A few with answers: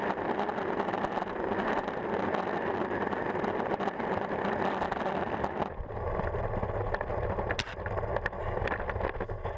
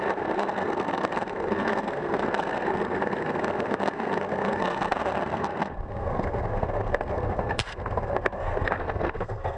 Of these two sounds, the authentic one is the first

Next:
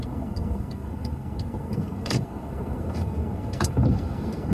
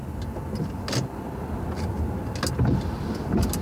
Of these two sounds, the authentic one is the second